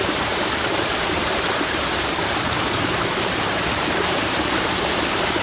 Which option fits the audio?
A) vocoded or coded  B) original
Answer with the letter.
A